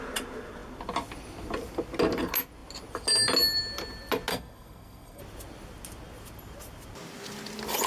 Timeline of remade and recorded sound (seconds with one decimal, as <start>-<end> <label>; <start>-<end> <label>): 0.0-4.3 recorded; 4.3-5.2 remade; 5.2-7.9 recorded